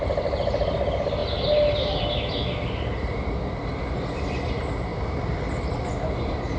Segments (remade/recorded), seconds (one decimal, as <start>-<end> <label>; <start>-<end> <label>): 0.0-6.6 recorded